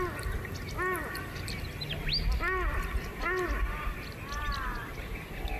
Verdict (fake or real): real